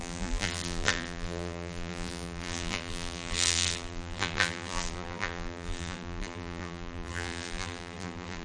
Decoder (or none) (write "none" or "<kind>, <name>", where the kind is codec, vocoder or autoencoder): vocoder, BigVGAN v2